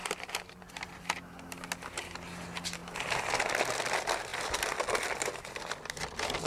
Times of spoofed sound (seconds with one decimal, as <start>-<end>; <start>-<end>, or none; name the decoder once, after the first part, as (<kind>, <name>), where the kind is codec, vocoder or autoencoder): 0.0-0.7 (vocoder, BigVGAN v2)

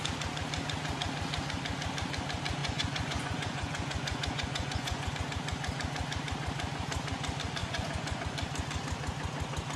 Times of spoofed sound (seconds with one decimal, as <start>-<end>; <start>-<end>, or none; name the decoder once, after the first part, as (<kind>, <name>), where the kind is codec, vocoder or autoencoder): 2.6-5.1 (vocoder, Vocos); 7.6-8.2

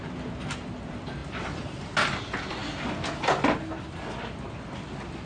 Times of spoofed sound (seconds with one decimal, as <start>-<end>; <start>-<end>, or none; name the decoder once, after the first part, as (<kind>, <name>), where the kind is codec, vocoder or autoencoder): 1.2-1.9 (vocoder, BigVGAN v2)

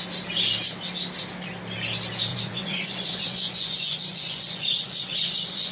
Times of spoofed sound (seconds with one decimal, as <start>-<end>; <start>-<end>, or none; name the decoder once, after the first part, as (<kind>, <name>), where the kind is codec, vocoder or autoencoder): 2.3-5.7 (vocoder, Vocos)